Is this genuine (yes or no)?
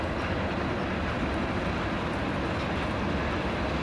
yes